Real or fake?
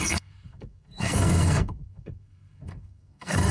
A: fake